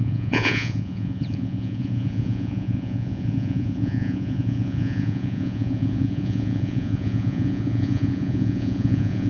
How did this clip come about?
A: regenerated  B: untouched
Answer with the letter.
A